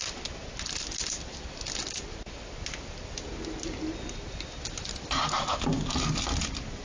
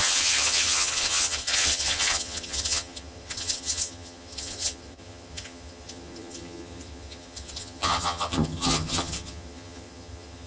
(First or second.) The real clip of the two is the first